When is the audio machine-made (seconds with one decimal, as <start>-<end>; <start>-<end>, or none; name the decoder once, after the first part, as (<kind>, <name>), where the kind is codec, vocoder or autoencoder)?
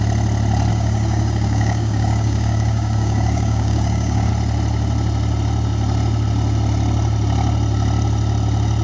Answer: 0.7-4.3 (codec, DAC)